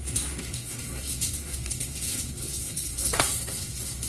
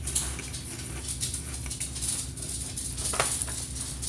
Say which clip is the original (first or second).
second